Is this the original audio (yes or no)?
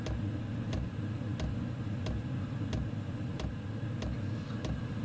yes